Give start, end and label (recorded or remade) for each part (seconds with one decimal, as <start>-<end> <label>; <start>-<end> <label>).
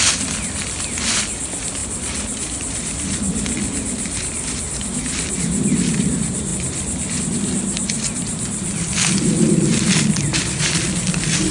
0.0-11.5 recorded